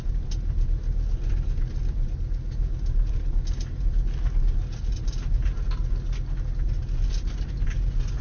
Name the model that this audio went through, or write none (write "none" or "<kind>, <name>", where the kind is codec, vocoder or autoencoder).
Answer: none